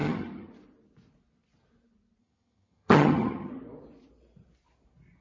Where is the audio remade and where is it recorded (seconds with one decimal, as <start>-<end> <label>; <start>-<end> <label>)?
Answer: 0.0-0.5 remade; 0.5-2.2 recorded; 2.2-3.5 remade; 3.5-5.2 recorded